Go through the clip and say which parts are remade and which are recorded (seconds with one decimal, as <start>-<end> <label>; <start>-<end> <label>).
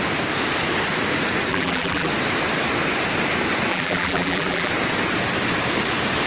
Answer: 0.0-1.5 recorded; 1.5-2.1 remade; 2.1-3.7 recorded; 3.7-4.7 remade; 4.7-6.3 recorded